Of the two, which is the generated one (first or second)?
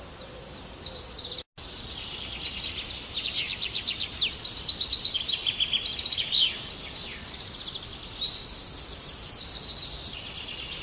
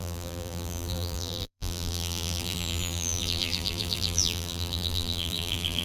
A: second